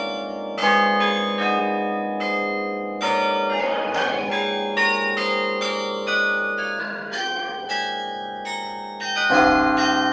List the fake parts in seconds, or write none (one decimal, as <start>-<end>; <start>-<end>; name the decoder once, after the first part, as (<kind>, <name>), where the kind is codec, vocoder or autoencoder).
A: 3.6-4.3 (autoencoder, DAC-VAE); 6.8-7.7